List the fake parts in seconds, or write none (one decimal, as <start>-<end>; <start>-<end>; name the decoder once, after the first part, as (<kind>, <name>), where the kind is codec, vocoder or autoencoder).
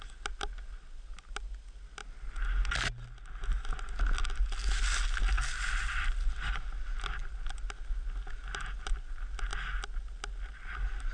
none